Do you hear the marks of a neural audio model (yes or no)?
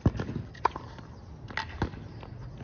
no